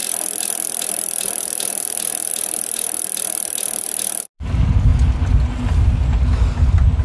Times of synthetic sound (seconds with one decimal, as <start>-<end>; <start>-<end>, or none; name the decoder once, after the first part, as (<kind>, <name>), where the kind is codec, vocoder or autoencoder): none